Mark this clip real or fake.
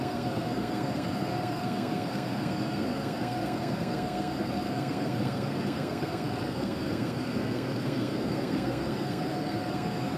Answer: fake